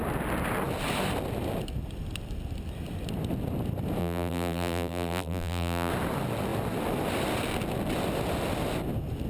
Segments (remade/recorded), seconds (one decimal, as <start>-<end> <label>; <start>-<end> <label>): 0.0-4.0 recorded; 4.0-5.9 remade; 5.9-9.3 recorded